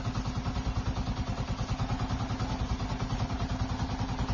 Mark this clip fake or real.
real